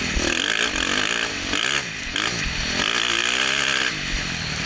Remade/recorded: recorded